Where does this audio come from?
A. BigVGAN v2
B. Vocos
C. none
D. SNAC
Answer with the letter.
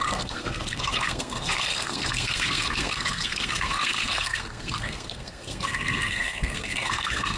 D